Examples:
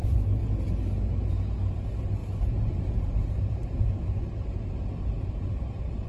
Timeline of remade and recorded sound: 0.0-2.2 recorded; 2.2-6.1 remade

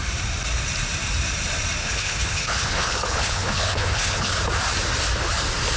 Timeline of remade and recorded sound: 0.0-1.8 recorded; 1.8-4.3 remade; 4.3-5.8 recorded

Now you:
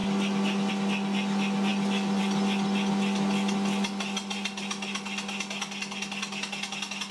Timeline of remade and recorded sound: 0.0-7.1 recorded

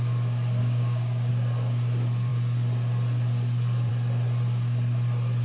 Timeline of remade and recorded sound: 0.0-0.6 recorded; 0.6-1.3 remade; 1.3-5.4 recorded